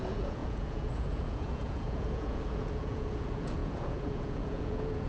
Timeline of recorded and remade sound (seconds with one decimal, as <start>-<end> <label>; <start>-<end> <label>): 0.0-5.1 remade